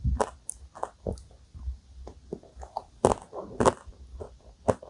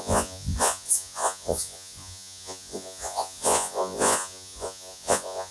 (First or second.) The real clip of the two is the first